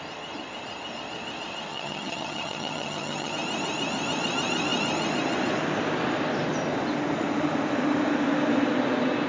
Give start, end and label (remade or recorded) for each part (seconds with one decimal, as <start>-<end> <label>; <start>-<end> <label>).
0.0-1.7 recorded; 1.7-3.3 remade; 3.3-9.3 recorded